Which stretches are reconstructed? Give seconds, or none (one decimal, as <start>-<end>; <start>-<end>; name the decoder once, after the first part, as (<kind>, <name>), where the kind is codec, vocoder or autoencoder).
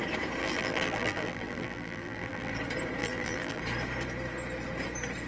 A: 0.4-2.5 (vocoder, BigVGAN v2); 3.0-3.6